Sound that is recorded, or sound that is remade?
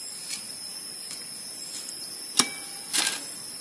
recorded